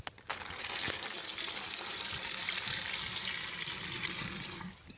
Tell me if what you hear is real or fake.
real